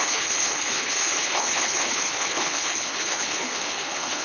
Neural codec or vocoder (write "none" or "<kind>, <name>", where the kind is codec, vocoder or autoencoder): codec, HILCodec